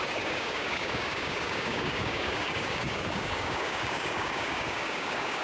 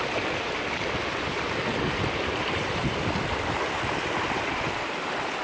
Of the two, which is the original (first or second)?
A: second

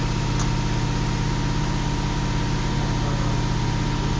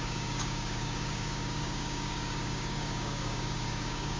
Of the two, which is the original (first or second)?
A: first